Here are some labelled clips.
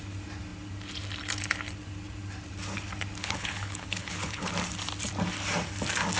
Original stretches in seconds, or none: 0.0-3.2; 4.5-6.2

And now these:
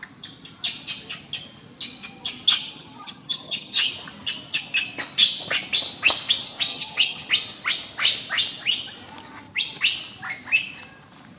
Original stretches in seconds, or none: 0.0-2.6; 3.9-6.7; 7.3-11.4